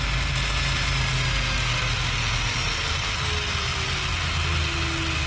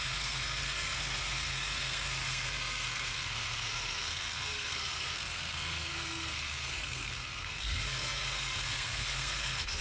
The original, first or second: first